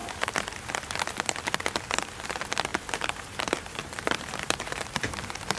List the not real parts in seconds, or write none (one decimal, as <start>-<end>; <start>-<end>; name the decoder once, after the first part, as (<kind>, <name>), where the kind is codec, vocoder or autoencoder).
0.0-1.0 (vocoder, BigVGAN v2); 2.7-5.6